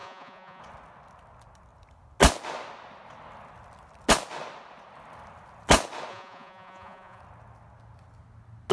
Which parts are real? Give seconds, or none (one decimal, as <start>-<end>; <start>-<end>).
0.6-6.1; 7.2-8.7